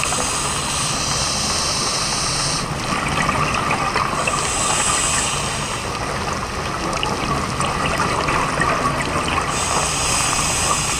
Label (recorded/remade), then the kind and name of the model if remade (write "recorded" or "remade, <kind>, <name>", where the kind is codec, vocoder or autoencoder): recorded